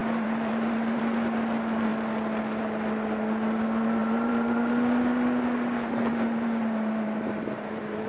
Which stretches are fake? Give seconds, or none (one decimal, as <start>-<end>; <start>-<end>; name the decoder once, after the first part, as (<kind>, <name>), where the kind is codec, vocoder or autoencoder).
0.0-1.0 (vocoder, BigVGAN v2); 4.0-4.7; 6.1-8.1